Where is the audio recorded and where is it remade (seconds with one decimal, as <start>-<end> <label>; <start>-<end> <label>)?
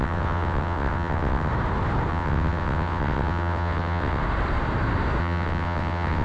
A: 0.0-1.5 remade; 1.5-2.1 recorded; 2.1-4.2 remade; 4.2-5.2 recorded; 5.2-6.2 remade